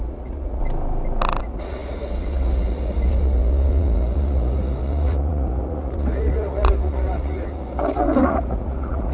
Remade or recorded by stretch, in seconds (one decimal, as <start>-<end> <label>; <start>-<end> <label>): 0.0-0.6 remade; 0.6-1.4 recorded; 1.4-9.1 remade